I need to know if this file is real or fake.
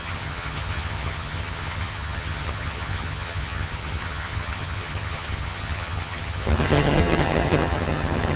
fake